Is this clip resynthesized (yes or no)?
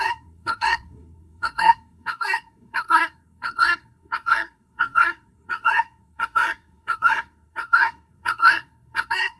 yes